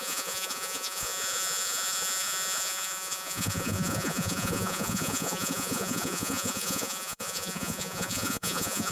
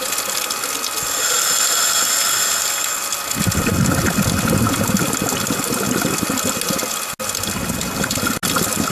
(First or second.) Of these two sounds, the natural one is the second